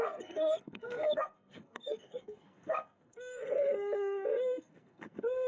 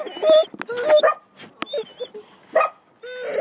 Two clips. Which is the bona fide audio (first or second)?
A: second